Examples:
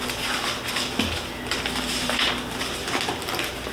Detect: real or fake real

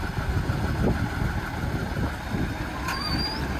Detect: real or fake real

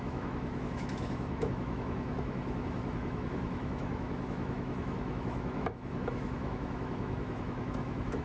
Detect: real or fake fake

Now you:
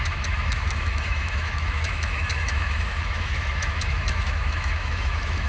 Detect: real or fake fake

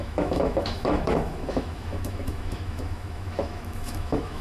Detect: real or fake fake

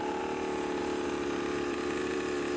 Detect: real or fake real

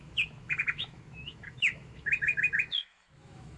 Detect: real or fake fake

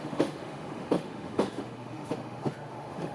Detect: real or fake fake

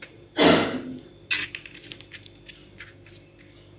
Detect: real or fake real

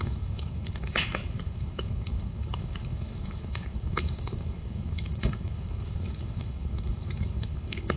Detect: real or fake fake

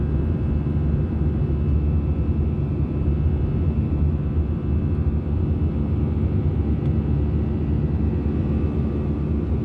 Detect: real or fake real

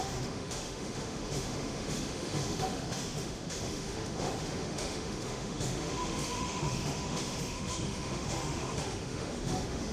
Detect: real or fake fake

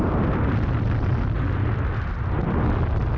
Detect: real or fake real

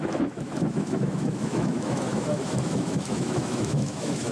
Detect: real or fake fake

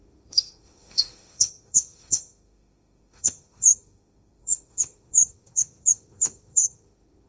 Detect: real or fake fake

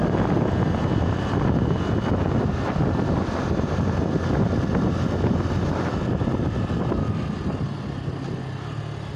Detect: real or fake real